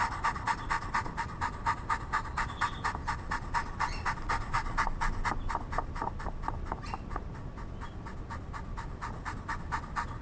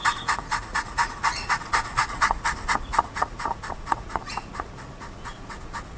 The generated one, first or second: second